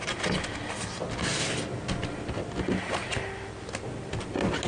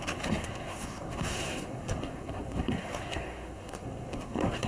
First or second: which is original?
first